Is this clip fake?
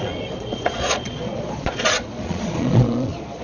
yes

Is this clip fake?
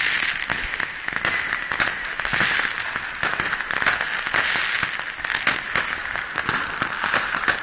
no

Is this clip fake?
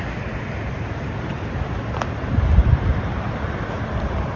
yes